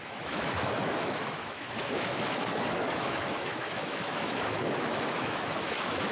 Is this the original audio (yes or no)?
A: no